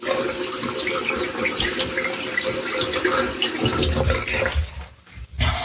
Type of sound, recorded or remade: recorded